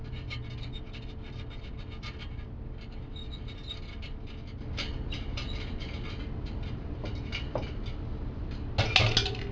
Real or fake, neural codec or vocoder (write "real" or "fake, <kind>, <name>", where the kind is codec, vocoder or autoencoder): real